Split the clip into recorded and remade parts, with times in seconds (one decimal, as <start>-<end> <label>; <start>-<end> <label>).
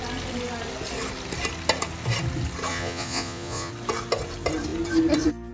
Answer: 0.0-2.7 recorded; 2.7-3.7 remade; 3.7-5.5 recorded